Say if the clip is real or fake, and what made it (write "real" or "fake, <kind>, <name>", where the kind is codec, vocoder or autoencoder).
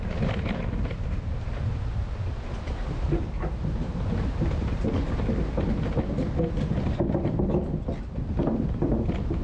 real